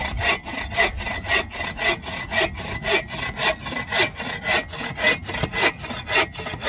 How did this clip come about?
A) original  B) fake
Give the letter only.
A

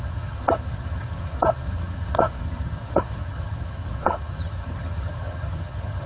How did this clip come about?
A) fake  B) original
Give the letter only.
A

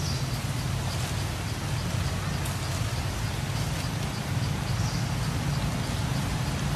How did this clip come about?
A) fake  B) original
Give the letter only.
B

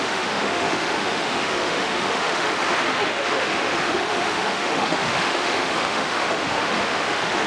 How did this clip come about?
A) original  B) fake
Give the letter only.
B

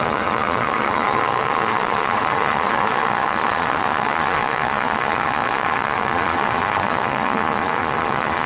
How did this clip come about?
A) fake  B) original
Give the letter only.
A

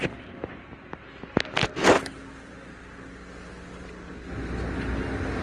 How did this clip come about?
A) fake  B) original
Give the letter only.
B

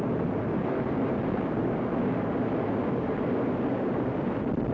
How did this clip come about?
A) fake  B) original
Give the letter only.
B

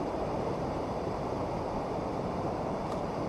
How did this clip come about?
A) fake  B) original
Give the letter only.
A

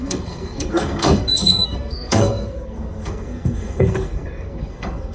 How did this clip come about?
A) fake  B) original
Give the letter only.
A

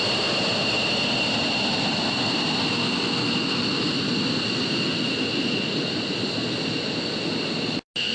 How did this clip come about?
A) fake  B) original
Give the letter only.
B